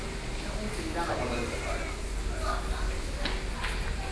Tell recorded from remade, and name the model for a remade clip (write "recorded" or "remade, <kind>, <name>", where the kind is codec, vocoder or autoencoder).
recorded